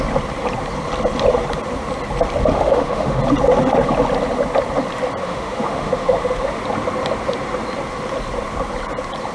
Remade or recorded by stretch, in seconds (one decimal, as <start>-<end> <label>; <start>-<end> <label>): 0.0-2.5 recorded; 2.5-3.2 remade; 3.2-5.2 recorded; 5.2-6.6 remade; 6.6-9.3 recorded